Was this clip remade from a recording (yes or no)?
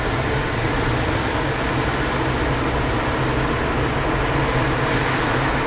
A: no